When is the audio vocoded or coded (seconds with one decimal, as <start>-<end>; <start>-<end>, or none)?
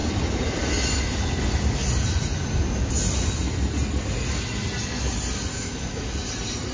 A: 5.5-6.0